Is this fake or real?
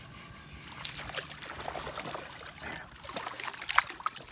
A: real